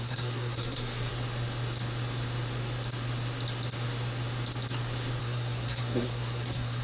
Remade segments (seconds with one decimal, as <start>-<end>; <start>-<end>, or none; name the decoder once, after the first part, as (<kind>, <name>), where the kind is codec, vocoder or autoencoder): 0.0-1.1 (codec, SNAC); 5.2-6.8